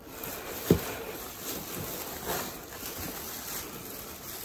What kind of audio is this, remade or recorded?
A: recorded